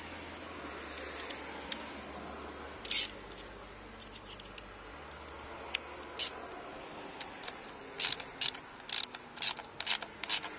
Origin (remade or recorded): recorded